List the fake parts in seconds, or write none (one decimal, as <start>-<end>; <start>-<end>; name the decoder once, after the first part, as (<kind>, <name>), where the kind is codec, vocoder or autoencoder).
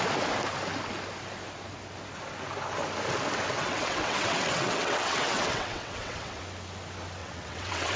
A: 3.5-6.4 (vocoder, WaveNeXt); 7.2-8.0